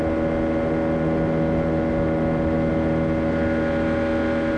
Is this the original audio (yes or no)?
yes